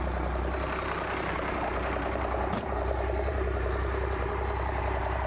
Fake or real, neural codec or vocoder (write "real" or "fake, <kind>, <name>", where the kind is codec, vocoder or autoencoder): fake, vocoder, BigVGAN v2